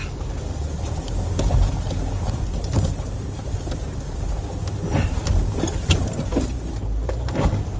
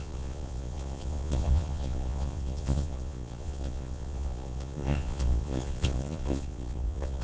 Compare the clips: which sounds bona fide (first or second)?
first